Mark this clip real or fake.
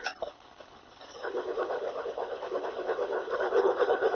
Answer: fake